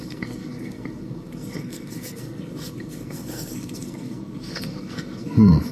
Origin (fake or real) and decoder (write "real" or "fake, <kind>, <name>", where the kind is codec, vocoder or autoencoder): fake, codec, SNAC